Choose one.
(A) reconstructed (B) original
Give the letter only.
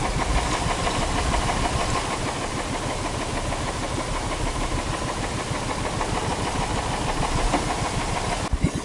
B